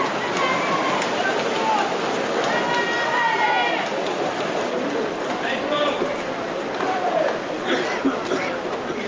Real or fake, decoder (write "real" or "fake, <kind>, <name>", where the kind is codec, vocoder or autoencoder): real